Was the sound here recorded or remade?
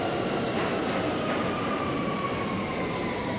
recorded